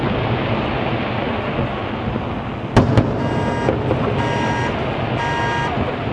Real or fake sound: real